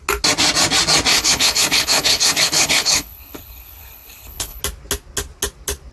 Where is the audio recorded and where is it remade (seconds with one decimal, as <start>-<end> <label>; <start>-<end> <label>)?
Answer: 0.0-1.1 recorded; 1.1-4.6 remade; 4.6-5.9 recorded